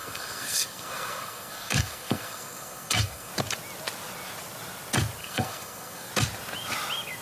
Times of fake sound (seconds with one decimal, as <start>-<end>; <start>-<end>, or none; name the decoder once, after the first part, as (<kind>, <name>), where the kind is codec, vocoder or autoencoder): 0.0-3.3 (codec, SNAC); 5.2-6.1